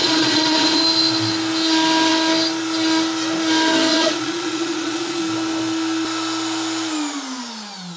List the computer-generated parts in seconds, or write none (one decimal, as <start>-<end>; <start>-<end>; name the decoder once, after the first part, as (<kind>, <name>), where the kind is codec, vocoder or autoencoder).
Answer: 0.0-0.6 (vocoder, Vocos); 3.9-5.2